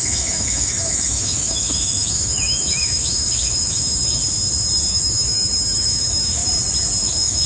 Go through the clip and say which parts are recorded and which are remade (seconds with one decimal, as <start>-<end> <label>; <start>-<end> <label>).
0.0-4.2 remade; 4.2-4.9 recorded; 4.9-6.4 remade; 6.4-7.0 recorded; 7.0-7.5 remade